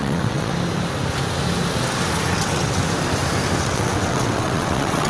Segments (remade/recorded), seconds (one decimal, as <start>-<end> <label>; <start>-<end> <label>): 0.0-0.5 remade; 0.5-2.3 recorded; 2.3-2.8 remade; 2.8-3.6 recorded; 3.6-5.1 remade